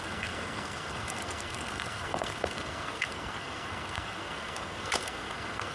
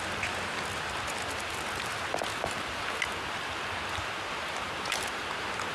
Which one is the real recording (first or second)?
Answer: second